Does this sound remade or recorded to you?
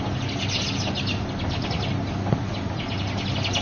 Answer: recorded